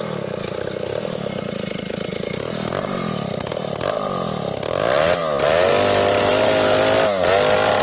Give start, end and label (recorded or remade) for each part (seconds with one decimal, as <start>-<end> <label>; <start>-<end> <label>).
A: 0.0-7.8 recorded